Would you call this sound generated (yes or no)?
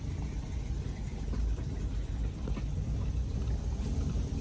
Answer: no